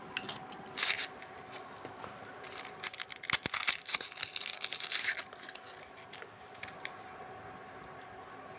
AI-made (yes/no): no